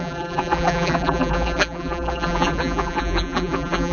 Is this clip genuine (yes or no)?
no